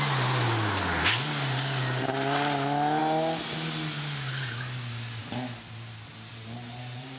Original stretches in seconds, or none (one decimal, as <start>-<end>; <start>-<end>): 0.0-6.3